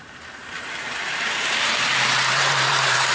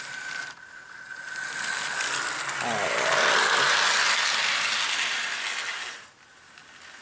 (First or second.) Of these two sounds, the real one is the second